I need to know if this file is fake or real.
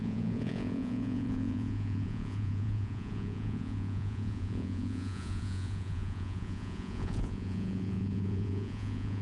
fake